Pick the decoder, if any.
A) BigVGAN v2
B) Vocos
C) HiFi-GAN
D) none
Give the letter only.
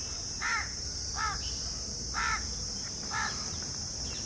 A